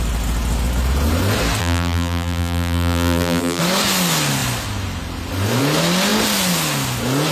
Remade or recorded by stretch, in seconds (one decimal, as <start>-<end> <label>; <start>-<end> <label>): 0.0-1.6 recorded; 1.6-3.6 remade; 3.6-7.3 recorded